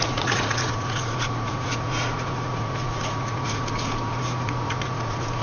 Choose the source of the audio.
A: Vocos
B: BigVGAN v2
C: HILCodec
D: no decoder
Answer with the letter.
A